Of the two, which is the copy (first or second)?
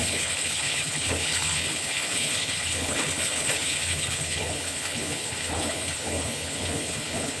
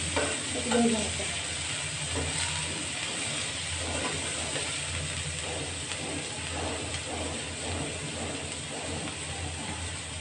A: first